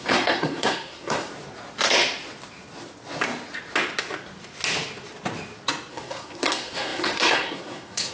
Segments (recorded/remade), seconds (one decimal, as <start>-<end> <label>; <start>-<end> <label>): 0.0-1.3 remade; 1.3-5.9 recorded; 5.9-8.1 remade